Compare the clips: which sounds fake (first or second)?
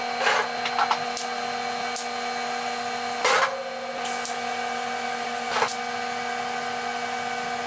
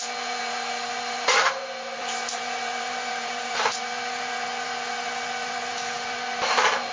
second